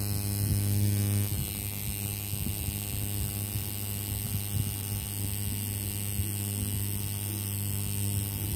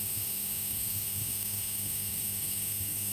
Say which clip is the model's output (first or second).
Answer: second